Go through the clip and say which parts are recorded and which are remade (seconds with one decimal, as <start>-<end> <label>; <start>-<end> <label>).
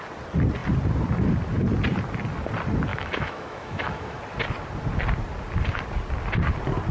0.0-2.9 recorded; 2.9-4.2 remade; 4.2-6.9 recorded